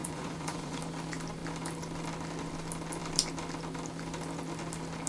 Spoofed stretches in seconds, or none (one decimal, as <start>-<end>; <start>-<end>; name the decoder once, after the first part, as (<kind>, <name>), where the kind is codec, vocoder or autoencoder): 0.0-0.8 (vocoder, Vocos)